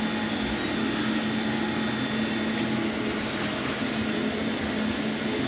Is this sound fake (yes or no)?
no